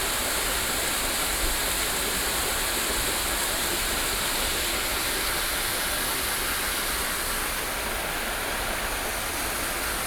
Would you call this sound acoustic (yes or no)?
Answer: yes